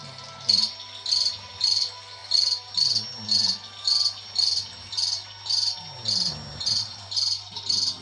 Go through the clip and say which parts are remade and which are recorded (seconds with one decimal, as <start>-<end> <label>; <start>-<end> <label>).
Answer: 0.0-8.0 recorded